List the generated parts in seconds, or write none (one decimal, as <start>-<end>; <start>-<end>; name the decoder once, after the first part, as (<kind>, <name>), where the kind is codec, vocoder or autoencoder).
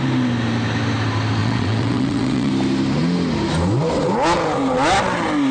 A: 1.4-2.5 (vocoder, WaveNeXt)